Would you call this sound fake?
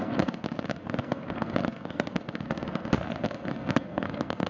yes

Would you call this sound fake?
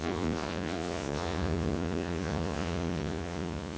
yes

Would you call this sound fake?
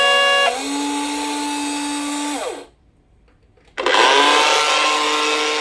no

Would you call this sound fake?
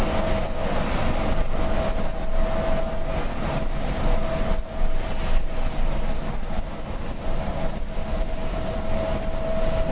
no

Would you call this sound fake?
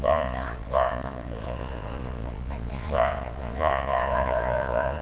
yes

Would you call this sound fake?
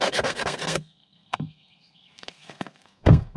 yes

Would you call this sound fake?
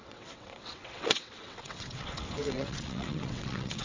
yes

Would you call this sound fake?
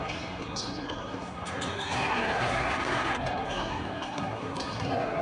yes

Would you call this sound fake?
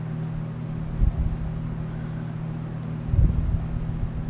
no